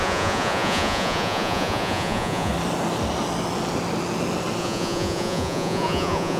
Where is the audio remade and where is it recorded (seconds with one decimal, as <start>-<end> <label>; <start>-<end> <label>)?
0.0-2.5 remade; 2.5-4.6 recorded; 4.6-6.4 remade